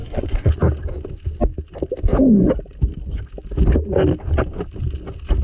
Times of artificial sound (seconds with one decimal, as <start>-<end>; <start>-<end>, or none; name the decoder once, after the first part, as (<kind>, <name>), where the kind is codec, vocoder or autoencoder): 0.0-0.5 (codec, SNAC)

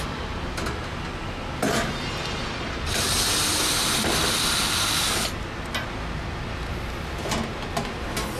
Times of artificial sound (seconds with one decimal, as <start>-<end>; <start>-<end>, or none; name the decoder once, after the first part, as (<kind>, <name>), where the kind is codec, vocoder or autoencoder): none

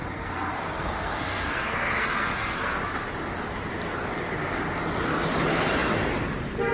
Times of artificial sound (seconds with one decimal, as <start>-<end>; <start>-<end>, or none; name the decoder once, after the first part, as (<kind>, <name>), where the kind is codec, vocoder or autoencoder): 0.0-2.8 (codec, SNAC)

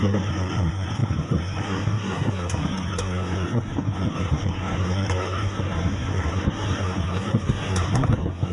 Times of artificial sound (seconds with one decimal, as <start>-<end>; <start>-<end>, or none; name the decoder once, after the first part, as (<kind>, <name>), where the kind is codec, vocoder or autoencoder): 0.0-8.5 (codec, SNAC)

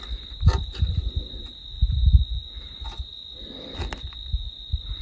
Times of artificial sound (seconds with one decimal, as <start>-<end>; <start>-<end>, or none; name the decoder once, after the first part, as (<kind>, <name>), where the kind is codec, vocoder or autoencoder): none

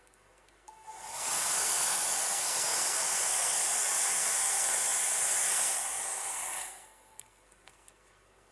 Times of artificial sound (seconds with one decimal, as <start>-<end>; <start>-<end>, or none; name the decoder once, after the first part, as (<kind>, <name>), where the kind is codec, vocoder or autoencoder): 0.0-8.5 (codec, SNAC)

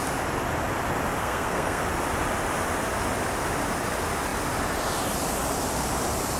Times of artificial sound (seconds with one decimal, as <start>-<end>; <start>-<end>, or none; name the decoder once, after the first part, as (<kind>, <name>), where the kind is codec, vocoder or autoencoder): 1.2-1.8 (codec, SNAC)